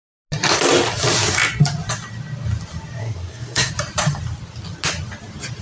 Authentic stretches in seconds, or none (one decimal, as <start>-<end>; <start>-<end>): 0.0-3.0; 3.7-5.6